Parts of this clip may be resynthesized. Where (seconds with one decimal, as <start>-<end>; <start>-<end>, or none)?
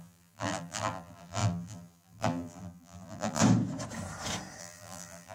0.0-3.4; 4.6-5.3